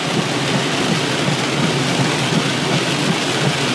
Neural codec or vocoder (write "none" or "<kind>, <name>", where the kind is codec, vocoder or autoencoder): none